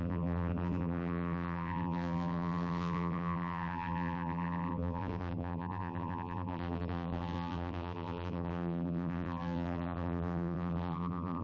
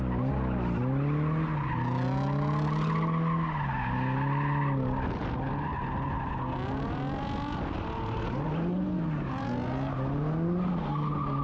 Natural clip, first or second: second